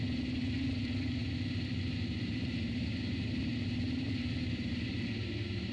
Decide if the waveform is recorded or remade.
remade